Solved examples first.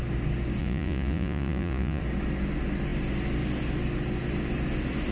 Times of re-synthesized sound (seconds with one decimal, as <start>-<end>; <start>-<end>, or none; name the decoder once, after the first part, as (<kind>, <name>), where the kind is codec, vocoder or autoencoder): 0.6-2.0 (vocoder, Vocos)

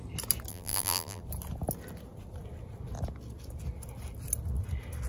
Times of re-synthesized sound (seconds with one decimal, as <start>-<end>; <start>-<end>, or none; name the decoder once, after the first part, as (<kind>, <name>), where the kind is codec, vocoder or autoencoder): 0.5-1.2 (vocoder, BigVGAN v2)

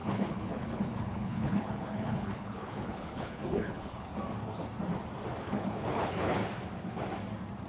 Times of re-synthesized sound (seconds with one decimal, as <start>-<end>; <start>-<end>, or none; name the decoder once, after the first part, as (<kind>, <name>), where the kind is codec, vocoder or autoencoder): 0.0-4.1 (codec, HILCodec); 5.4-6.4

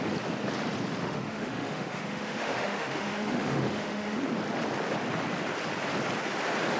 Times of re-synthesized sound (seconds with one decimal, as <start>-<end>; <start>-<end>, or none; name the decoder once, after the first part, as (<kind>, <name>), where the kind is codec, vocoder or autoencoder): 1.0-4.2 (autoencoder, DAC-VAE)

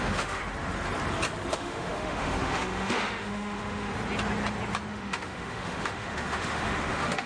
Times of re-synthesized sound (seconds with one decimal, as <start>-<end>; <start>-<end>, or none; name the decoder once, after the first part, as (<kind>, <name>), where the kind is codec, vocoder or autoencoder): 0.0-0.4 (autoencoder, DAC-VAE); 1.5-3.9; 4.9-7.3

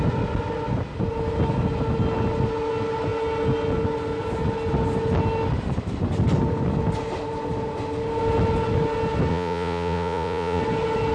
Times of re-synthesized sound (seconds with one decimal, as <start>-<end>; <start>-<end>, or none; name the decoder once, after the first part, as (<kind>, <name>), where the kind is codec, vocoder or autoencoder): 9.3-10.6 (vocoder, Vocos)

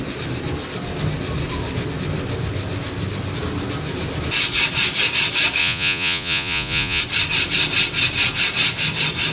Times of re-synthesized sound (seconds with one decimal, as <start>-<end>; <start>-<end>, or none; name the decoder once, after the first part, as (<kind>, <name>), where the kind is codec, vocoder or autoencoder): 5.6-7.0 (vocoder, Vocos)

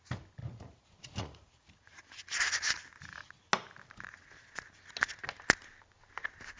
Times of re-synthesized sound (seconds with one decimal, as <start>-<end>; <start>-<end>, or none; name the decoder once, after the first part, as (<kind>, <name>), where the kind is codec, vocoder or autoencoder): 0.4-2.0 (vocoder, Vocos)